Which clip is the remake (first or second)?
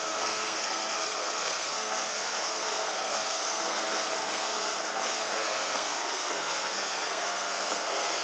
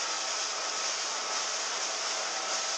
first